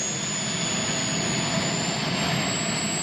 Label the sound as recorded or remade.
recorded